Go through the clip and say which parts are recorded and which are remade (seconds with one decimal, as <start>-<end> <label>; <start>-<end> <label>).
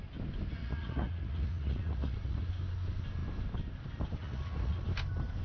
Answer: 0.0-0.6 recorded; 0.6-2.5 remade; 2.5-4.2 recorded; 4.2-4.8 remade; 4.8-5.4 recorded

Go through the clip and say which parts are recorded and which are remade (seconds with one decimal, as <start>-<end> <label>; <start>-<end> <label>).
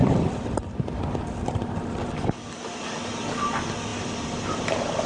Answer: 0.0-2.6 remade; 2.6-3.9 recorded; 3.9-5.1 remade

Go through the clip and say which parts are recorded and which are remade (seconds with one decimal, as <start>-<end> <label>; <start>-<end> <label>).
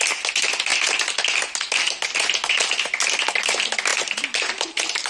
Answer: 0.0-3.9 recorded; 3.9-5.1 remade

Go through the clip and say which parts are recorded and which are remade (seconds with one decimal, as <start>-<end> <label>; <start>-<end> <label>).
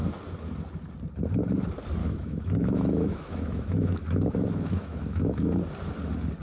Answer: 0.0-2.0 recorded; 2.0-5.6 remade; 5.6-6.4 recorded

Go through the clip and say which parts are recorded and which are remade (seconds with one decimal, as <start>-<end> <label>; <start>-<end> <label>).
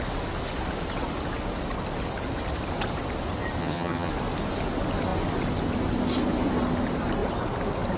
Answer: 0.0-3.6 recorded; 3.6-4.1 remade; 4.1-8.0 recorded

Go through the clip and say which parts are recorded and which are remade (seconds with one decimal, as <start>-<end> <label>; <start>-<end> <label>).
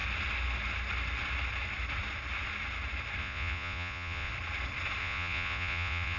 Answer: 0.0-3.2 recorded; 3.2-4.3 remade; 4.3-5.0 recorded; 5.0-6.2 remade